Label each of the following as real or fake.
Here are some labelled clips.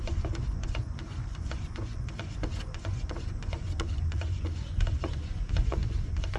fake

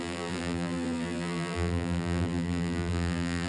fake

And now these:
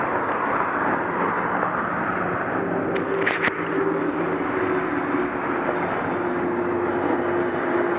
real